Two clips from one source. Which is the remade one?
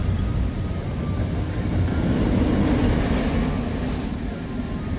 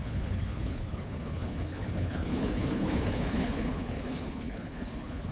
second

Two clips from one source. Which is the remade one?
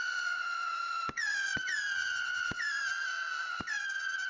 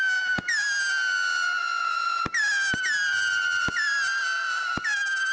first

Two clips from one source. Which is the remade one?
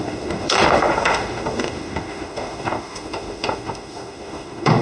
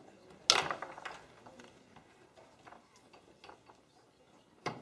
first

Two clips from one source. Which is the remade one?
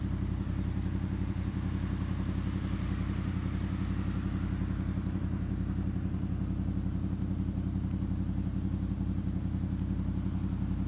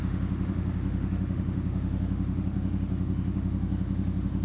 second